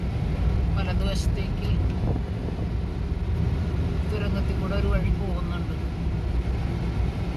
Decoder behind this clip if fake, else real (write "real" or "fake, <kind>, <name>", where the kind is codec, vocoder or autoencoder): real